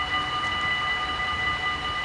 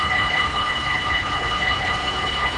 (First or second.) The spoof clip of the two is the second